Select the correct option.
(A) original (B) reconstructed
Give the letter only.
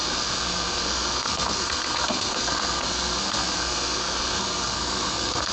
B